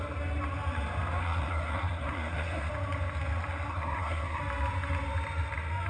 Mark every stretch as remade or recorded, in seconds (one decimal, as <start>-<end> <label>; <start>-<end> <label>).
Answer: 0.0-1.2 recorded; 1.2-2.7 remade; 2.7-3.7 recorded; 3.7-4.4 remade; 4.4-5.9 recorded